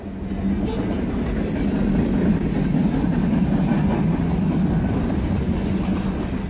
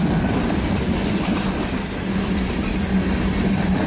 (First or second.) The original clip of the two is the first